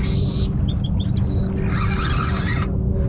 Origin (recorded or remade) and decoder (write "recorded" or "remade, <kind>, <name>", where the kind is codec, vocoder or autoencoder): recorded